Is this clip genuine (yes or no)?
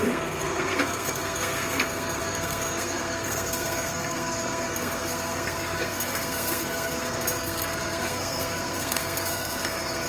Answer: no